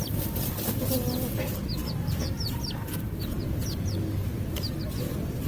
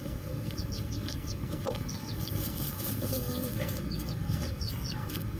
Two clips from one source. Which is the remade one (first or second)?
second